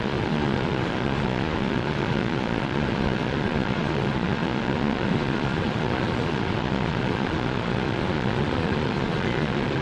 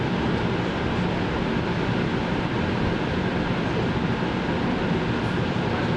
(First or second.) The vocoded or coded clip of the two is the first